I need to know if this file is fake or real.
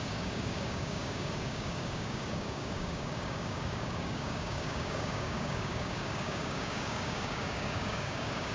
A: fake